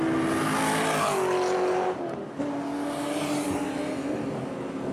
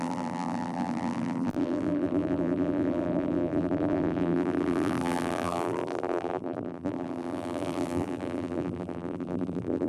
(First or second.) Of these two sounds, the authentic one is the first